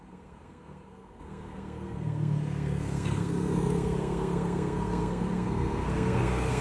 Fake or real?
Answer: fake